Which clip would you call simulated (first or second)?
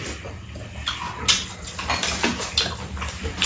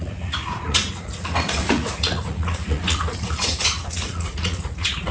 second